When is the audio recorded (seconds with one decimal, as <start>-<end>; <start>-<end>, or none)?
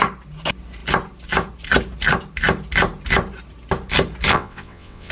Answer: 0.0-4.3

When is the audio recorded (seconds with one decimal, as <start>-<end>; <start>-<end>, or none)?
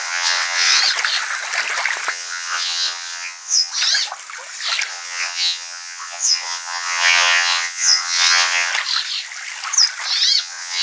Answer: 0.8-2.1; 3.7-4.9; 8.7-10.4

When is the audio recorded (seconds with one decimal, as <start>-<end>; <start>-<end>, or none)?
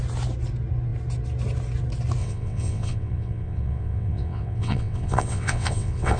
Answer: 0.0-2.2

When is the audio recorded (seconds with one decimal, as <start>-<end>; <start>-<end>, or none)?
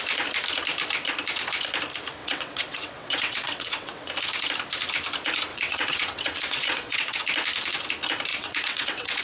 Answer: 0.0-2.2; 4.1-5.5; 7.2-8.3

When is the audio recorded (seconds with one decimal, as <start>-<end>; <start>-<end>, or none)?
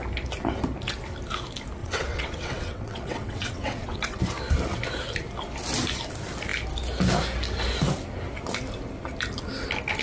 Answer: 0.0-1.8; 4.2-10.0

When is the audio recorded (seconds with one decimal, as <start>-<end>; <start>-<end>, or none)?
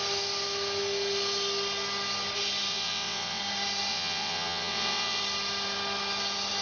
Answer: 0.0-2.7; 3.4-3.9; 5.2-6.6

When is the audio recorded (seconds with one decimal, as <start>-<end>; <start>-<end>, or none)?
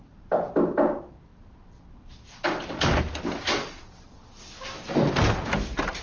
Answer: 0.0-6.0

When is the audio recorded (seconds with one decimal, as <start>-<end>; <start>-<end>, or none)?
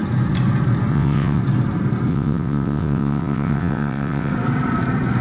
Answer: 0.0-0.9; 1.4-2.1; 4.3-5.2